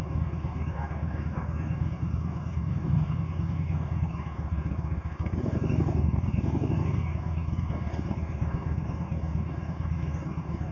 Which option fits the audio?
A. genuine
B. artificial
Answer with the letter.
B